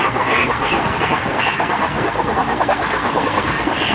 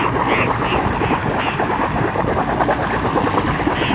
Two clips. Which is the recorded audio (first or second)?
second